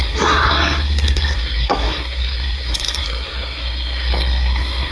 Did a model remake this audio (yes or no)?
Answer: yes